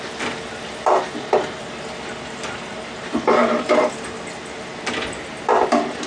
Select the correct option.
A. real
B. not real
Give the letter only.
A